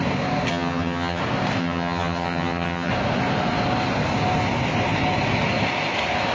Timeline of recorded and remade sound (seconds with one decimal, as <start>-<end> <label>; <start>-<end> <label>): 0.0-0.5 recorded; 0.5-1.2 remade; 1.2-1.6 recorded; 1.6-2.9 remade; 2.9-6.3 recorded